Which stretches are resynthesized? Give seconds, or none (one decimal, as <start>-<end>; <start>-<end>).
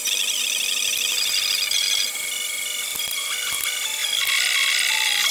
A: none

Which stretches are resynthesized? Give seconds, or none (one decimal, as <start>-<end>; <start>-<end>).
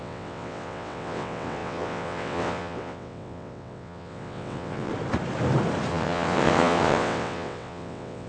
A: 0.0-4.9; 5.9-8.3